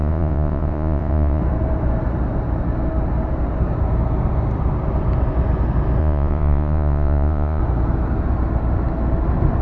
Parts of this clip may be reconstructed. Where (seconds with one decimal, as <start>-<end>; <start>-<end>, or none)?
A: 0.0-1.4; 6.0-7.6